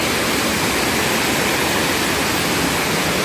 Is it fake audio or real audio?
real